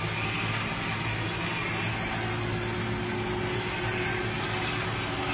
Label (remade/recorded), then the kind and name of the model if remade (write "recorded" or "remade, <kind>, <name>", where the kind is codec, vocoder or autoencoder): recorded